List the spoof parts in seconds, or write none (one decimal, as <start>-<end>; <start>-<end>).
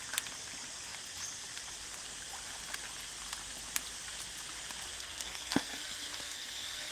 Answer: 4.9-6.9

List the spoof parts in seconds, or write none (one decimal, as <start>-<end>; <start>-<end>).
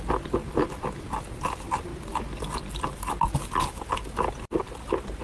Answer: none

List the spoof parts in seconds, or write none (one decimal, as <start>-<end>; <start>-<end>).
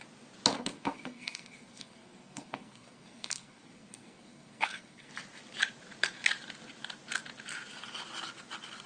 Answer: 0.5-5.1